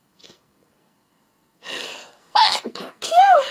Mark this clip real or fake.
fake